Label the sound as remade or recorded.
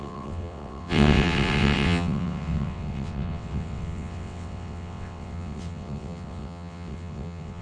remade